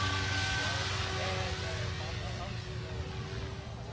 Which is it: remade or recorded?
recorded